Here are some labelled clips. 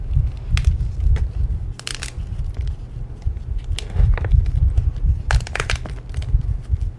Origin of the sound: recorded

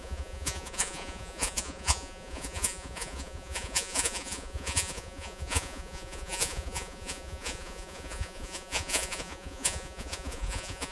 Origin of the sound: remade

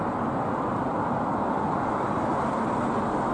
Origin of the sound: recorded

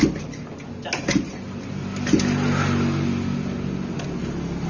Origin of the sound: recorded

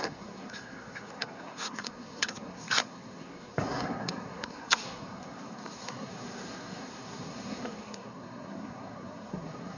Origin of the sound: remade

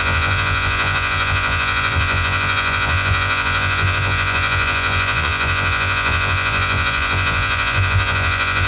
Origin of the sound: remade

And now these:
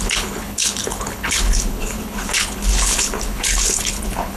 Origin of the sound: remade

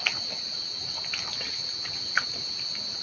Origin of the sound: remade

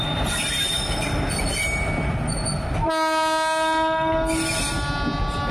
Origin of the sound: recorded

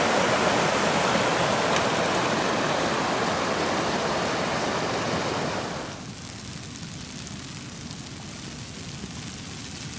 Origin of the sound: recorded